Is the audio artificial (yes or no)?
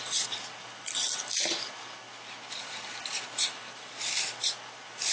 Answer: no